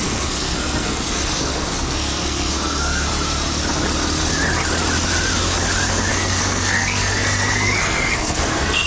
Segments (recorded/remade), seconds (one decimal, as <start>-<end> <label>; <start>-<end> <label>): 0.0-3.1 remade; 3.1-6.1 recorded; 6.1-8.9 remade